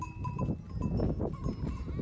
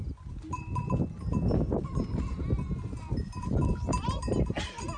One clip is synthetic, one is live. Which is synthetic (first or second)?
second